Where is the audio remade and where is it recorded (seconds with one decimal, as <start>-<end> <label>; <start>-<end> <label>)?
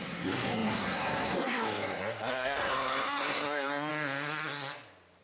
0.0-3.9 remade; 3.9-5.2 recorded